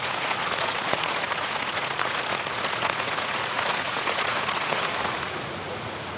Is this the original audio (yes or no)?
no